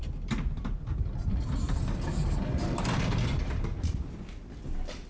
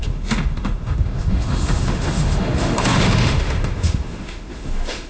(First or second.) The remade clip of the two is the second